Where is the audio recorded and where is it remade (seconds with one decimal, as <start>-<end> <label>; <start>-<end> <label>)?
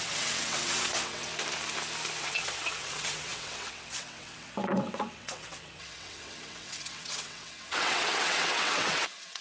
0.0-1.3 remade; 1.3-2.2 recorded; 2.2-9.4 remade